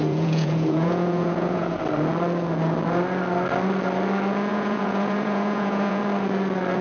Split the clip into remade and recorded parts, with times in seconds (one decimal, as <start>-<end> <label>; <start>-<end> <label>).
0.0-1.8 remade; 1.8-4.5 recorded; 4.5-6.0 remade; 6.0-6.8 recorded